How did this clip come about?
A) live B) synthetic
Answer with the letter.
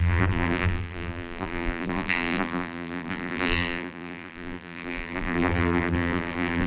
B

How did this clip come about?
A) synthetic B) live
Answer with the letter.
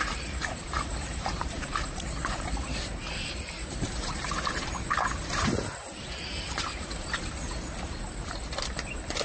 A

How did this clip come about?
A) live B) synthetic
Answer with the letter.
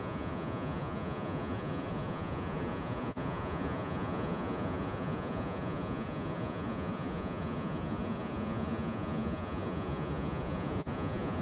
B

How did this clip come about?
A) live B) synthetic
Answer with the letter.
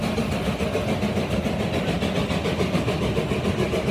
A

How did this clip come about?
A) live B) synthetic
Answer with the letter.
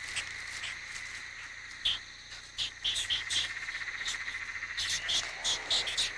A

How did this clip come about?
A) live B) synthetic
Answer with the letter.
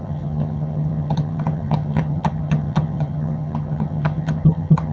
B